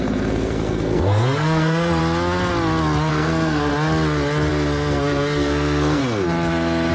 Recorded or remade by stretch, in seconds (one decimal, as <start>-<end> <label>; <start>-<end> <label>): 0.0-2.0 remade; 2.0-3.1 recorded; 3.1-3.7 remade; 3.7-4.5 recorded; 4.5-6.0 remade; 6.0-6.9 recorded